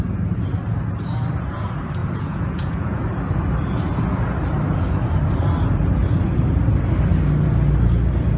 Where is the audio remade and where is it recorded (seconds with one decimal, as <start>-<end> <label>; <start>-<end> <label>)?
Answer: 0.0-2.0 recorded; 2.0-3.0 remade; 3.0-8.4 recorded